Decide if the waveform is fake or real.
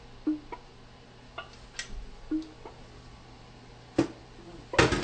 real